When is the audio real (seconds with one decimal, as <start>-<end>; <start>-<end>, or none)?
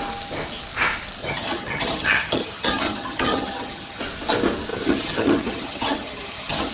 0.0-1.2; 4.0-4.7